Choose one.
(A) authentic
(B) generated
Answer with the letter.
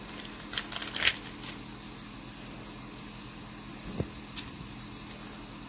A